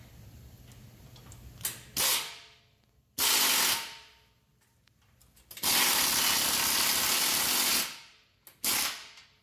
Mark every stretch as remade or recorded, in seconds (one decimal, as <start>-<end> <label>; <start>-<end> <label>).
0.0-9.4 recorded